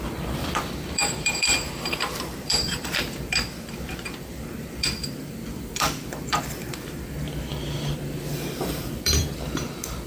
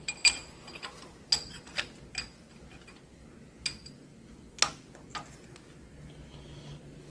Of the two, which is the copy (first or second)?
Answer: first